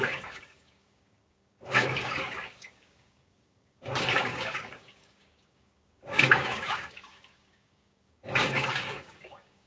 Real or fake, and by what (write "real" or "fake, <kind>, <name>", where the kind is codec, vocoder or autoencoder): fake, codec, DAC